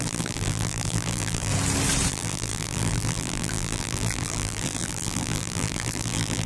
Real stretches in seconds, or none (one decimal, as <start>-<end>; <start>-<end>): 1.5-2.1